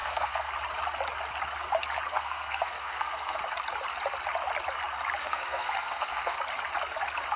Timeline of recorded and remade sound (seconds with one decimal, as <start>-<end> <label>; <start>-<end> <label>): 0.0-0.5 remade; 0.5-2.1 recorded; 2.1-3.4 remade; 3.4-5.2 recorded; 5.2-6.4 remade; 6.4-7.4 recorded